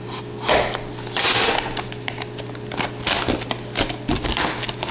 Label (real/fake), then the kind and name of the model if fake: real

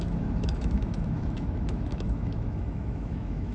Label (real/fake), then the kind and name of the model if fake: fake, autoencoder, DAC-VAE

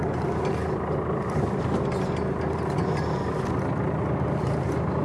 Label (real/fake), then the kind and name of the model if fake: real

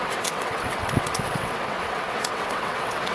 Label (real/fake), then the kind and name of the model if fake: fake, vocoder, WaveNeXt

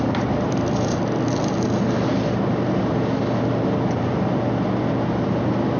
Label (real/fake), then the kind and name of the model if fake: real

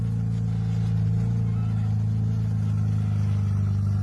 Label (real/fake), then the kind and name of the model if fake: real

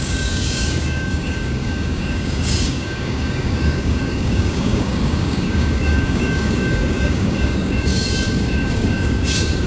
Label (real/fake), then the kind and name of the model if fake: fake, codec, DAC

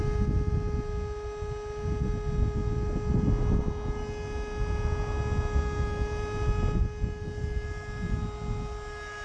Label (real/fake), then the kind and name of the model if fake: real